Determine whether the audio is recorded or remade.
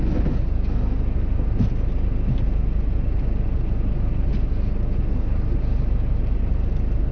recorded